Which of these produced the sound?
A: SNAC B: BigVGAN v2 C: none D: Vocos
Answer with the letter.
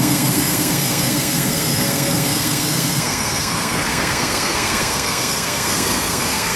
A